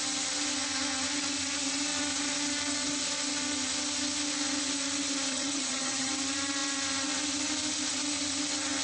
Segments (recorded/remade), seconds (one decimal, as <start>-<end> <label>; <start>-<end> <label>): 0.0-5.3 recorded; 5.3-6.1 remade; 6.1-8.8 recorded